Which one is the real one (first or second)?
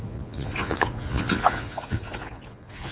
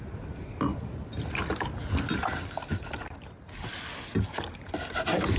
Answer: second